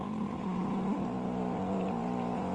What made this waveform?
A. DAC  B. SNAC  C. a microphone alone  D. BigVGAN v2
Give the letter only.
D